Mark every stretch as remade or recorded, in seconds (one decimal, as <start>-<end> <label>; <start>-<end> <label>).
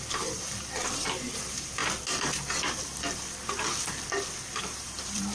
0.0-1.8 remade; 1.8-4.6 recorded; 4.6-5.3 remade